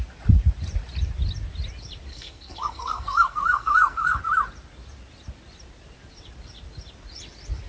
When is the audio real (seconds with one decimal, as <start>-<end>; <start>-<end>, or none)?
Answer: 0.0-2.1; 4.2-7.7